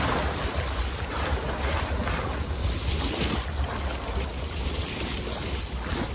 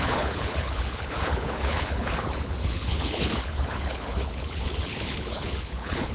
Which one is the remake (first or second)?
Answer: second